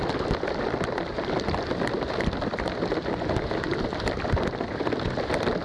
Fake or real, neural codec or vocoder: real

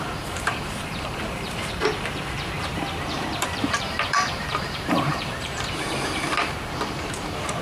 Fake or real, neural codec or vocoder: fake, vocoder, BigVGAN v2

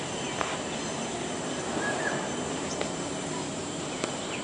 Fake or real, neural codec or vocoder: fake, vocoder, BigVGAN v2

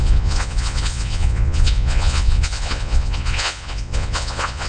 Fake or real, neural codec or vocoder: fake, vocoder, Vocos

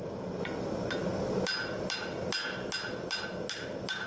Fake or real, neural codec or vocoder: real